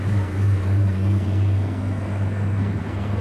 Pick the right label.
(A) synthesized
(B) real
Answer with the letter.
A